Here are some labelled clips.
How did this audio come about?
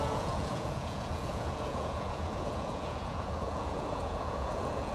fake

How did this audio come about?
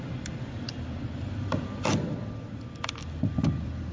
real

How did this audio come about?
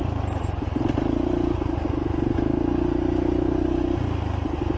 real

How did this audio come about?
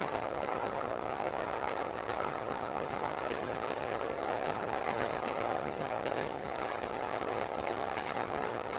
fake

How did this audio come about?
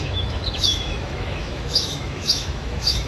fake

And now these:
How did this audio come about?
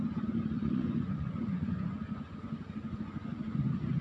fake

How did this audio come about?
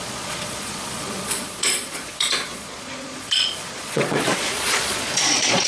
fake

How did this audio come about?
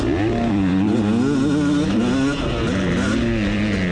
real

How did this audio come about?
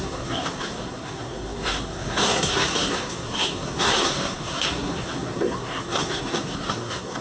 fake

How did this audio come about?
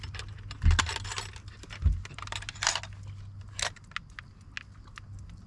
real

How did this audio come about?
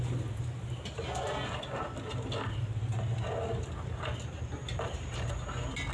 real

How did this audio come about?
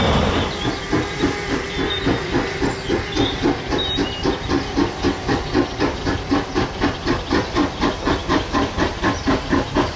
real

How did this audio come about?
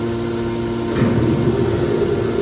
real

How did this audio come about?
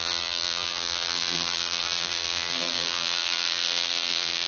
fake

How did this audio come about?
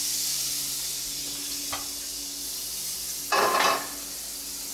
real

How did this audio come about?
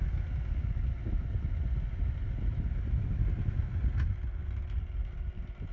real